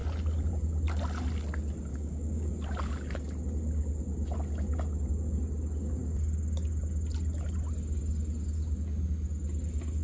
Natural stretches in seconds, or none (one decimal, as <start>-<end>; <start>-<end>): 0.0-1.9; 2.5-10.0